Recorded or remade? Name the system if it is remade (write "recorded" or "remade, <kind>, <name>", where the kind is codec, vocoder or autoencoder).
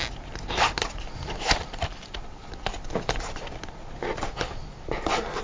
recorded